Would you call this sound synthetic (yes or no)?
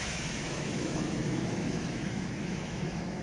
yes